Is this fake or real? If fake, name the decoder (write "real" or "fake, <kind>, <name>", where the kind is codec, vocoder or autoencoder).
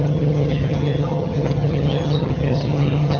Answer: fake, vocoder, HiFi-GAN